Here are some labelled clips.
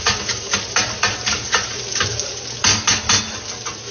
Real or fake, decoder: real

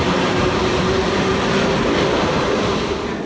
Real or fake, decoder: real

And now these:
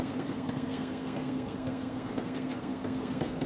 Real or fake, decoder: fake, codec, SNAC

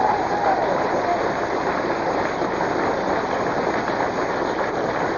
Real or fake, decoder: real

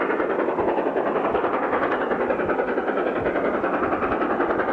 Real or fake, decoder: real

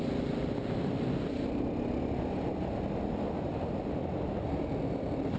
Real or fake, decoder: real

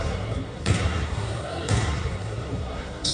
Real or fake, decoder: fake, codec, SNAC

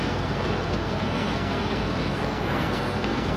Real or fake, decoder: fake, codec, SNAC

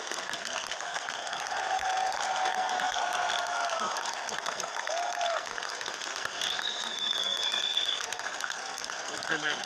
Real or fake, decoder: fake, codec, SNAC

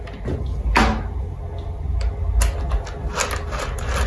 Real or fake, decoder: real